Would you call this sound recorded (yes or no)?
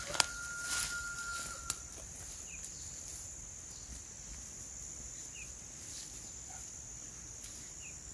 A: yes